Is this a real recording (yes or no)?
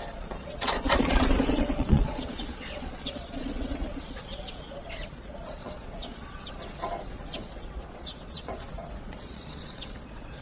no